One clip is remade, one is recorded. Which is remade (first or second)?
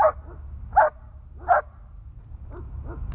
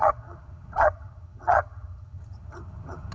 second